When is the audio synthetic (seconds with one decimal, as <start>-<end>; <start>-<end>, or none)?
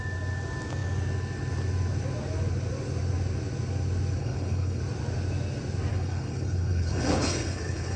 4.2-4.8; 5.9-8.0